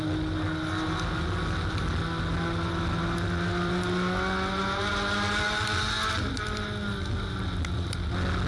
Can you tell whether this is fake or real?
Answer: real